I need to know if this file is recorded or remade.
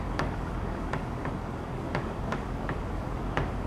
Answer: remade